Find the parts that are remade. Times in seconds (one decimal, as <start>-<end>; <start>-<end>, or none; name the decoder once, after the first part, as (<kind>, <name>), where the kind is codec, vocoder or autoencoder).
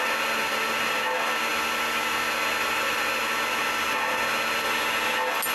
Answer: none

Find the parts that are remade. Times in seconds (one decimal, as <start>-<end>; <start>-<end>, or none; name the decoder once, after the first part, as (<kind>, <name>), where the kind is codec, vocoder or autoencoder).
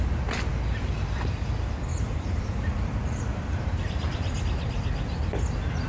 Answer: 1.9-4.4 (vocoder, BigVGAN v2)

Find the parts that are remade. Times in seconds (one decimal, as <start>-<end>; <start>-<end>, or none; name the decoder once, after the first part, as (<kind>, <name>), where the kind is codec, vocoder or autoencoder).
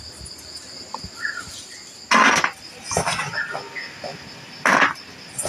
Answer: none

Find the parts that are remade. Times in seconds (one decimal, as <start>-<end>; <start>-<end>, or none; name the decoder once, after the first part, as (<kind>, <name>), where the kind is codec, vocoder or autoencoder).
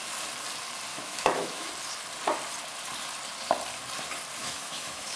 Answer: 0.9-1.7 (autoencoder, DAC-VAE); 4.4-5.2